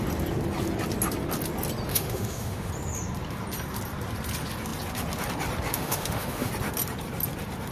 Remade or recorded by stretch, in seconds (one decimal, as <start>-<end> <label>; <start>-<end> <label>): 0.0-1.9 recorded; 1.9-2.7 remade; 2.7-5.7 recorded; 5.7-6.5 remade; 6.5-7.7 recorded